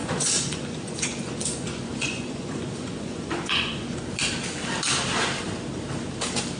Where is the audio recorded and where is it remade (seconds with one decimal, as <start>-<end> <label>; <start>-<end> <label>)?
0.0-4.0 remade; 4.0-6.6 recorded